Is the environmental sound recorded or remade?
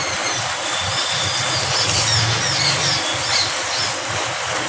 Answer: recorded